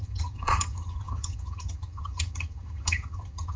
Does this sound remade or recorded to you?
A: remade